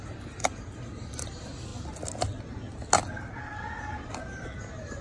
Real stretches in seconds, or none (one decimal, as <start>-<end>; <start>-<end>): 1.7-5.0

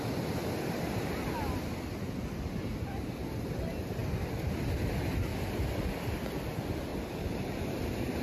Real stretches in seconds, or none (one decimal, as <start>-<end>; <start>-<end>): 0.0-6.9

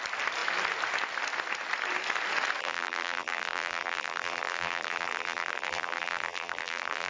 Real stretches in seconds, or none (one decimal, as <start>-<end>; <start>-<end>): 0.0-2.6

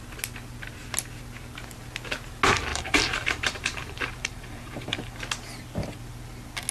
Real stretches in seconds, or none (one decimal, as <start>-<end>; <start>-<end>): 0.0-2.7; 5.1-6.7

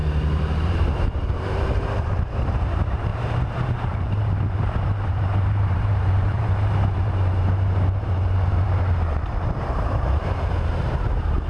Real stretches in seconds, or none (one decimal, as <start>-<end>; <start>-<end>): none

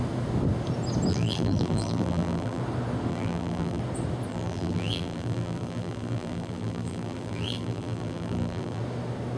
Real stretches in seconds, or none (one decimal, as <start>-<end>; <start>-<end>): 0.0-1.1; 2.6-3.1; 3.8-4.3; 8.8-9.4